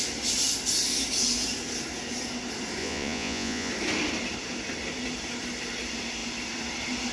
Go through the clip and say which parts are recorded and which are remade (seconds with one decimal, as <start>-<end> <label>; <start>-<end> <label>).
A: 0.0-2.8 recorded; 2.8-3.7 remade; 3.7-7.1 recorded